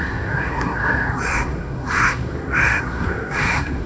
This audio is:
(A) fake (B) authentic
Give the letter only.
A